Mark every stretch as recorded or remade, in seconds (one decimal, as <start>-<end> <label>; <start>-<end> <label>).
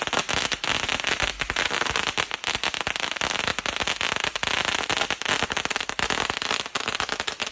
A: 0.0-7.5 recorded